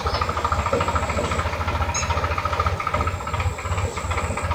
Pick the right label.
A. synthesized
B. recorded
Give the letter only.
B